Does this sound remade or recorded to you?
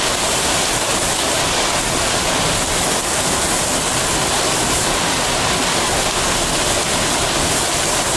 recorded